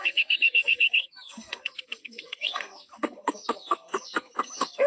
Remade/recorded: remade